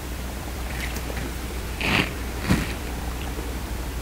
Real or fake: fake